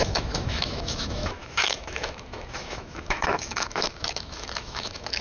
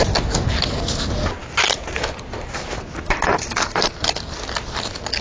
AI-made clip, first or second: first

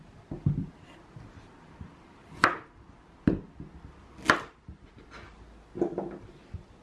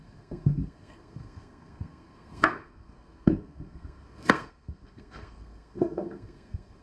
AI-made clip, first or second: second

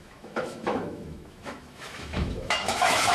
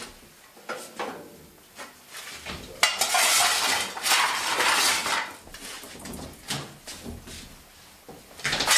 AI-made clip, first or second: first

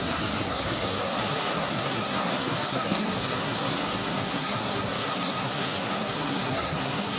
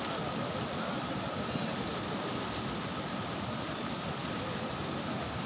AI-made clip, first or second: first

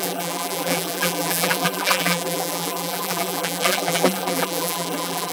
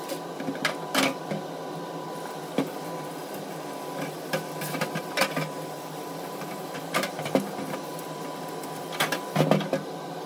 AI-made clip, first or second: first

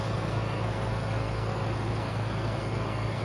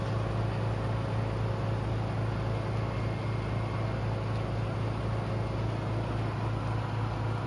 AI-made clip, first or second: first